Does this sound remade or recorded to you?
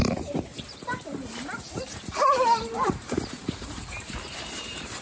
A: remade